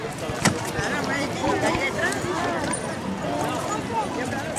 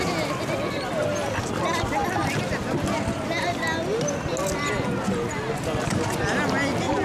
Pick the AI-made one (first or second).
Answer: first